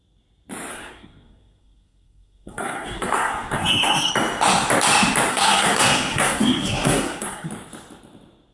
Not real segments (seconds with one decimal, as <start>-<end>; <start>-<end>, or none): 0.7-4.1; 5.3-7.5